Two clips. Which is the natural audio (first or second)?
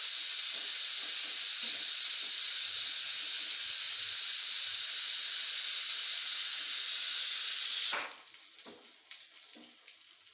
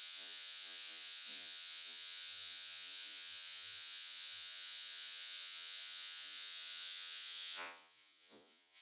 first